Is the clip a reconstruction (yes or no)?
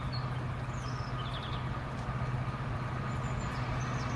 no